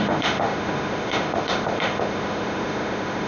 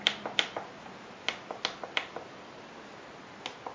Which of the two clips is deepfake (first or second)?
first